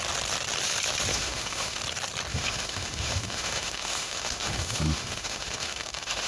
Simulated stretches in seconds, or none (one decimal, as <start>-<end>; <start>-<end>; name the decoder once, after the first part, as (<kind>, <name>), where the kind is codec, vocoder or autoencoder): 1.1-1.8 (autoencoder, DAC-VAE); 2.3-6.3